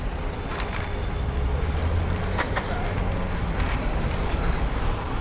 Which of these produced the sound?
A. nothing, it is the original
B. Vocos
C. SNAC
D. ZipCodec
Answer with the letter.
A